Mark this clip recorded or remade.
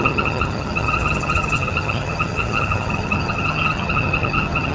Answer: remade